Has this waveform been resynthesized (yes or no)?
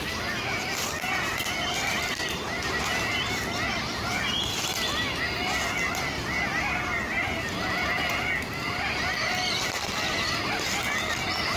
no